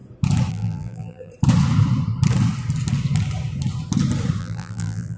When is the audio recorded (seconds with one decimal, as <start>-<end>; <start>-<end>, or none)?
0.0-0.5; 1.3-4.4